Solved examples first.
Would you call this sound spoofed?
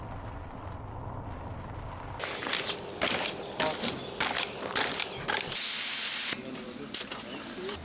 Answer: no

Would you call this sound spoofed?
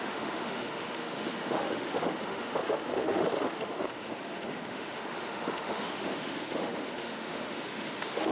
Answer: yes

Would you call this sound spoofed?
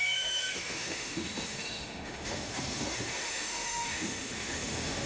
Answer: yes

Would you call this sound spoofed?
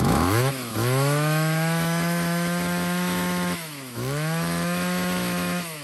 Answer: yes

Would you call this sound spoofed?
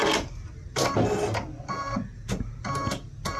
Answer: no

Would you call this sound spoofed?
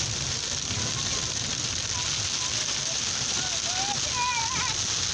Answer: no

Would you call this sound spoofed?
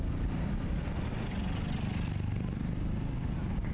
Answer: no